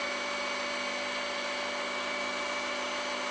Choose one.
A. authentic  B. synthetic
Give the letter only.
A